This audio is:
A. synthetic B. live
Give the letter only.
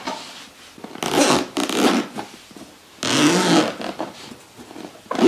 B